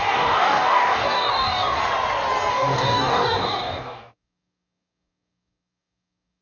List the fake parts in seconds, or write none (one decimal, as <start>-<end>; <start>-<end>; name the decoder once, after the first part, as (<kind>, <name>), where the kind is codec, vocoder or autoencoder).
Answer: 0.0-1.8 (codec, DAC); 2.5-6.4